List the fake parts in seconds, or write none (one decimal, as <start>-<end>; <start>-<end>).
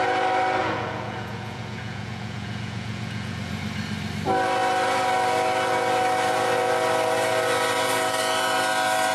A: 0.6-3.6